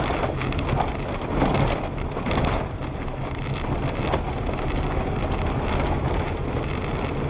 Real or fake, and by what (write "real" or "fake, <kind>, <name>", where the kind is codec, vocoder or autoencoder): real